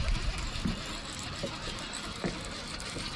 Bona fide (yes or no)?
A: yes